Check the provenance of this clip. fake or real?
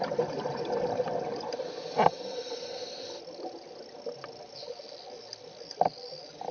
real